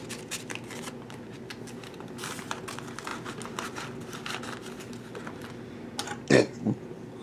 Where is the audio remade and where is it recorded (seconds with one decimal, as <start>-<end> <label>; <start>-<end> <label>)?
0.0-7.2 recorded